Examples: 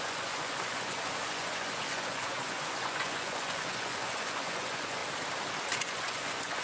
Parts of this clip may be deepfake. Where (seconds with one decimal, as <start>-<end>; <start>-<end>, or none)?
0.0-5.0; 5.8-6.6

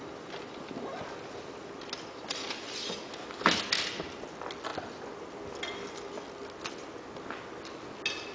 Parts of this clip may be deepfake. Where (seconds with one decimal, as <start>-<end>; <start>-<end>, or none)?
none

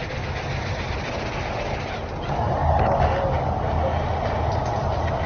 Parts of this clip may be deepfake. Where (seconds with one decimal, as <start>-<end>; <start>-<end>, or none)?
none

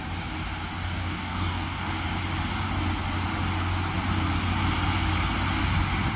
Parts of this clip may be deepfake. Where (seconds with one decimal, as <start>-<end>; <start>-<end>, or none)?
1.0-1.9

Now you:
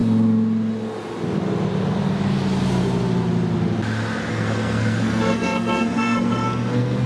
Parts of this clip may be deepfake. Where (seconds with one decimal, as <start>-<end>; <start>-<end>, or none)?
4.3-7.1